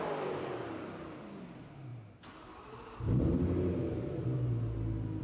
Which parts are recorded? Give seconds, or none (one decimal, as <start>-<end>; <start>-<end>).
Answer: 1.9-5.2